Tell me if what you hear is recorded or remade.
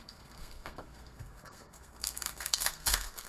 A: remade